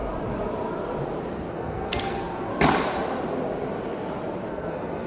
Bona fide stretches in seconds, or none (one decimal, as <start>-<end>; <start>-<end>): 0.0-1.5; 2.5-4.5